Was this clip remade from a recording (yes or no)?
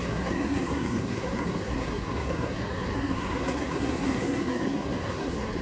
yes